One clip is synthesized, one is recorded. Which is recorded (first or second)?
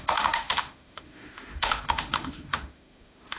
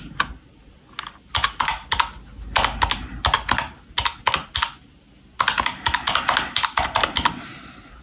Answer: second